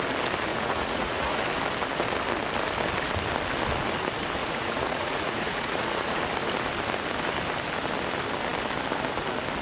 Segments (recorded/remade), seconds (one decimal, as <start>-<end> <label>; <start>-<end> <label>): 0.0-0.5 recorded; 0.5-1.4 remade; 1.4-4.4 recorded; 4.4-6.2 remade; 6.2-9.6 recorded